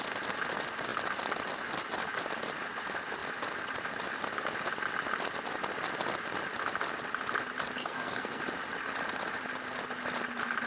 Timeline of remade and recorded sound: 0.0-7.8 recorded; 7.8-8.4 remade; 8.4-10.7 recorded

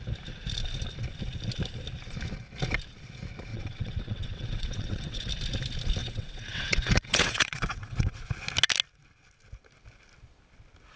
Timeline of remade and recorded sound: 0.0-3.5 recorded; 3.5-5.3 remade; 5.3-6.0 recorded; 6.0-8.2 remade; 8.2-11.0 recorded

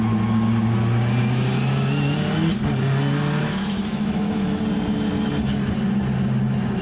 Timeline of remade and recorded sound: 0.0-3.4 recorded; 3.4-4.6 remade; 4.6-6.8 recorded

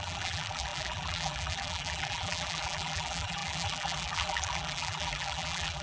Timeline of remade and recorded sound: 0.0-5.8 remade

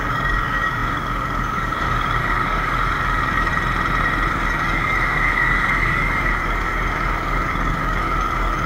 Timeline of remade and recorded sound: 0.0-3.5 remade; 3.5-4.3 recorded; 4.3-8.7 remade

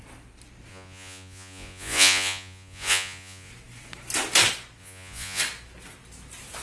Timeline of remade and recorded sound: 0.0-0.7 recorded; 0.7-3.5 remade; 3.5-4.8 recorded; 4.8-5.4 remade; 5.4-6.6 recorded

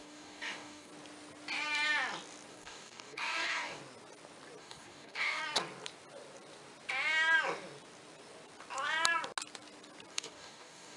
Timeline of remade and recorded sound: 0.0-0.9 remade; 0.9-2.5 recorded; 2.5-3.8 remade; 3.8-4.6 recorded; 4.6-5.4 remade; 5.4-10.1 recorded; 10.1-11.0 remade